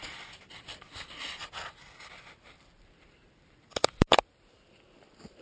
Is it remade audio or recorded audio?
recorded